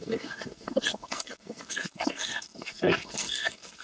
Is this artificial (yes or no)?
yes